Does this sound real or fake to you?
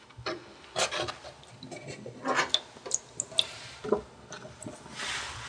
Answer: real